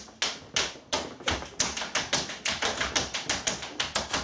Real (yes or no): yes